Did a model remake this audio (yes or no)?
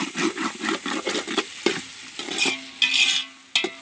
no